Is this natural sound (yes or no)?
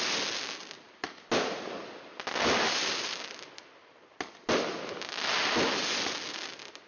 yes